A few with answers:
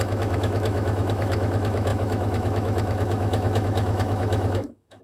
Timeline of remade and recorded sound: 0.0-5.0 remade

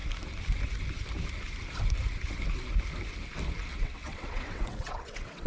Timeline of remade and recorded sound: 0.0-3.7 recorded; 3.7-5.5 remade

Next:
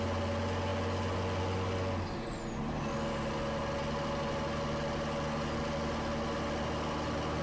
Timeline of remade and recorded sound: 0.0-7.4 recorded

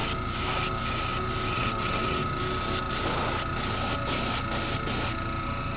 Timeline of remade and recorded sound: 0.0-1.5 recorded; 1.5-2.2 remade; 2.2-5.8 recorded